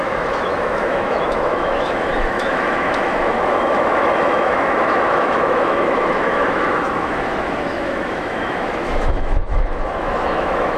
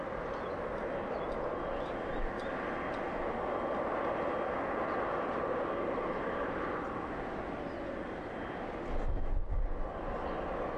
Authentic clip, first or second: second